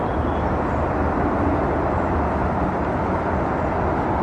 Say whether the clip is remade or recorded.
recorded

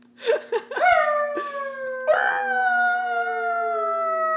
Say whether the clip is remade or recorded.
recorded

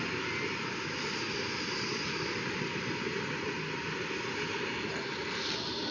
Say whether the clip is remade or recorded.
recorded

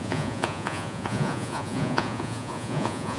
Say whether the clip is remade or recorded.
remade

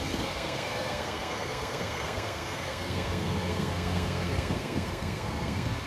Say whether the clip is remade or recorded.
remade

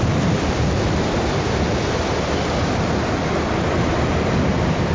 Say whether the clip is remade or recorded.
recorded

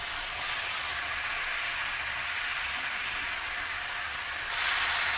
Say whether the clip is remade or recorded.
recorded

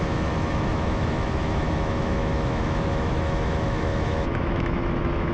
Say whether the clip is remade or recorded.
remade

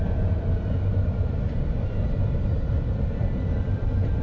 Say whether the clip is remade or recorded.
remade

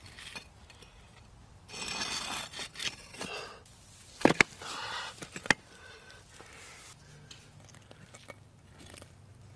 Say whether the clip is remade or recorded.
recorded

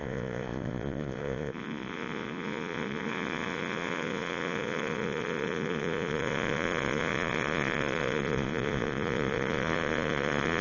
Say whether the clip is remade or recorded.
remade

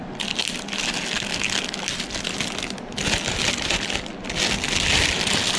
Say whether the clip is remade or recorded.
recorded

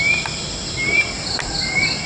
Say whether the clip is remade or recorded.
recorded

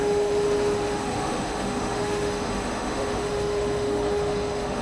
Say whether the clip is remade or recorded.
remade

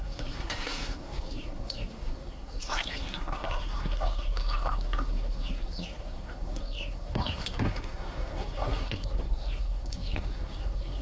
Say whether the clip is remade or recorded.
remade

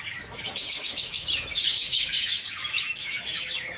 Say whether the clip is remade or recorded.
remade